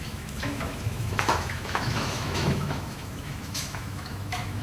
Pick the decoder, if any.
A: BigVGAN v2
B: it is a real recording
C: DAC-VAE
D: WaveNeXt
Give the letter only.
C